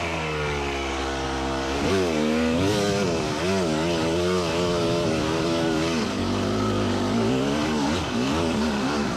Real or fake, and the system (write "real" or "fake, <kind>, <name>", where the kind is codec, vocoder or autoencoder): fake, codec, DAC